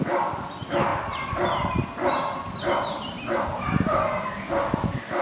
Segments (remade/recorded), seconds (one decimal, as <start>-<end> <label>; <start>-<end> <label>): 0.0-5.2 recorded

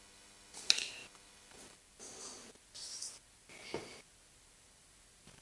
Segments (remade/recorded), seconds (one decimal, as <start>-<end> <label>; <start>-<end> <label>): 0.0-5.4 recorded

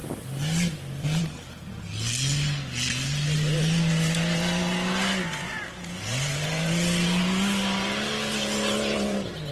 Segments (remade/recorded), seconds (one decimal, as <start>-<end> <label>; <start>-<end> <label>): 0.0-9.5 recorded